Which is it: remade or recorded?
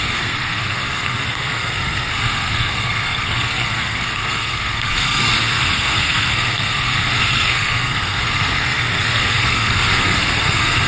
remade